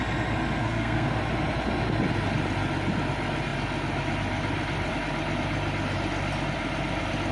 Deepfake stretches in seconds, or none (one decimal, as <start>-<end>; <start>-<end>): 0.6-1.2